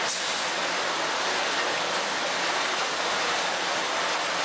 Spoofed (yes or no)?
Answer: no